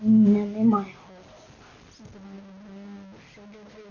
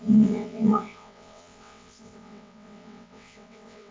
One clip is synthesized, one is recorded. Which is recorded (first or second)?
first